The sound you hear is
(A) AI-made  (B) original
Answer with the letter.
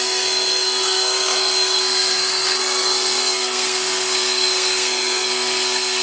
A